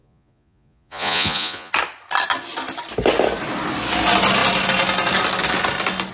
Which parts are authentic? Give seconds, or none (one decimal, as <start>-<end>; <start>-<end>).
1.7-6.1